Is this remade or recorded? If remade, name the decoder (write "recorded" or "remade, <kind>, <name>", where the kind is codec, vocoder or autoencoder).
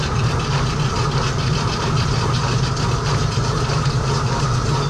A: recorded